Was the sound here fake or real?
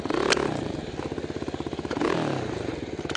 real